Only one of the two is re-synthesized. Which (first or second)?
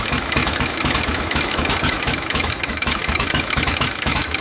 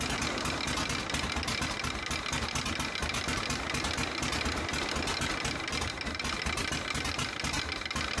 first